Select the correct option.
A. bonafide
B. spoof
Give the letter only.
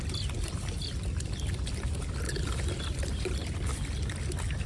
A